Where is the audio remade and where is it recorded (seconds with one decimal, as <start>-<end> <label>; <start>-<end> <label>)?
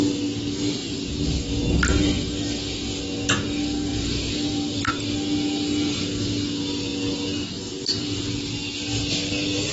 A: 0.0-0.8 recorded; 0.8-1.6 remade; 1.6-3.9 recorded; 3.9-4.9 remade; 4.9-9.7 recorded